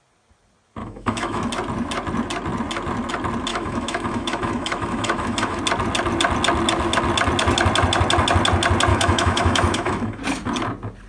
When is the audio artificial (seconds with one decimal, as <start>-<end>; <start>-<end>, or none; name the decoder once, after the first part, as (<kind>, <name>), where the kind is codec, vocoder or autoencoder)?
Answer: 0.8-1.5 (autoencoder, DAC-VAE); 3.5-5.6; 8.9-10.2